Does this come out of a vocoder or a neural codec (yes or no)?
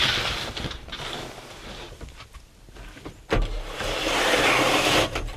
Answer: no